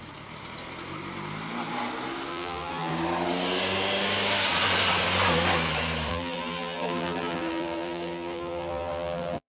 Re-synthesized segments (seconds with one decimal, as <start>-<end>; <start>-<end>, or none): 2.3-2.9; 6.1-9.5